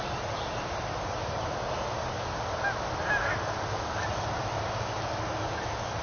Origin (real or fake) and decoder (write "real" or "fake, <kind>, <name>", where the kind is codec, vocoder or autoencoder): real